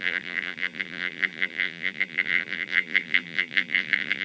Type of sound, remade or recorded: remade